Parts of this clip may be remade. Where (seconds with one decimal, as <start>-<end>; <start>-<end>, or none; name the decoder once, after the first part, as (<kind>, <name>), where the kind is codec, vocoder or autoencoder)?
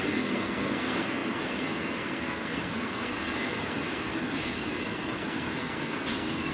0.0-6.5 (codec, SNAC)